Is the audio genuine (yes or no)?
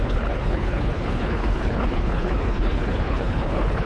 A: no